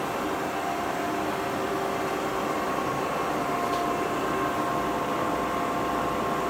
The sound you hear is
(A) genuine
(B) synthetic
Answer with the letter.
A